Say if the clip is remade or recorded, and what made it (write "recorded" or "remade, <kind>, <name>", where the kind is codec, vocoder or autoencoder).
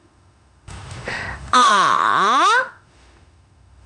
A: remade, autoencoder, DAC-VAE